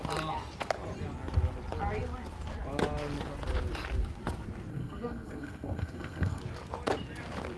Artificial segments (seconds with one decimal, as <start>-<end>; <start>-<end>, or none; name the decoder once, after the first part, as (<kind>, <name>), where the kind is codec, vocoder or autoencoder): 4.7-6.4 (codec, SNAC)